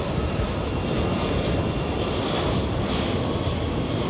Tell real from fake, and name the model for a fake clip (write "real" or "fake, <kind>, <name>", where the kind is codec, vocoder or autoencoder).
fake, vocoder, BigVGAN v2